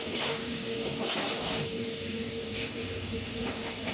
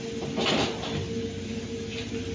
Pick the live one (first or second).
second